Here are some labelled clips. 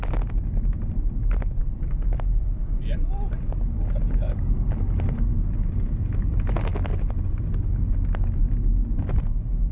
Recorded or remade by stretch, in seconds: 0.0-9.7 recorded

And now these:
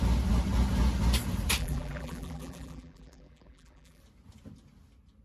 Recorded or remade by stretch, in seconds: 0.0-1.6 recorded; 1.6-4.0 remade; 4.0-5.2 recorded

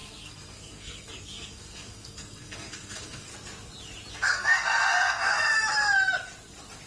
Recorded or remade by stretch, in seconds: 0.0-3.3 remade; 3.3-4.1 recorded; 4.1-5.3 remade; 5.3-6.9 recorded

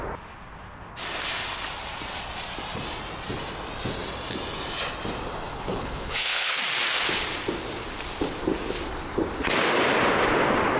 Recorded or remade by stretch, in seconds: 0.0-5.5 recorded; 5.5-6.6 remade; 6.6-10.8 recorded

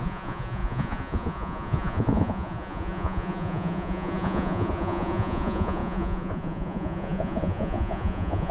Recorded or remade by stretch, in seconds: 0.0-8.5 remade

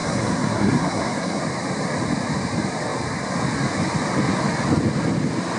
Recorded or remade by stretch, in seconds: 0.0-1.4 remade; 1.4-5.6 recorded

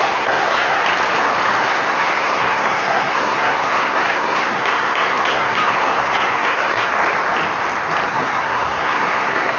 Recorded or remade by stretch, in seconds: 0.0-0.8 remade; 0.8-1.6 recorded; 1.6-6.9 remade; 6.9-8.1 recorded; 8.1-9.6 remade

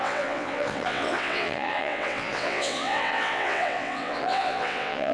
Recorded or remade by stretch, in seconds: 0.0-5.1 remade